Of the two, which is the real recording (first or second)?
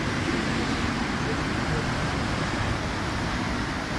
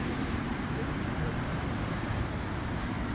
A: first